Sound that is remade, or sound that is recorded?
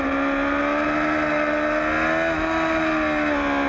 recorded